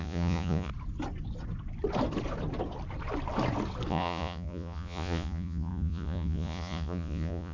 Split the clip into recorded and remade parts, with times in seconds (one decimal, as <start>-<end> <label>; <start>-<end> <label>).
0.0-0.7 remade; 0.7-3.9 recorded; 3.9-7.5 remade